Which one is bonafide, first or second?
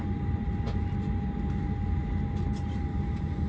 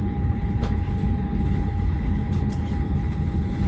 first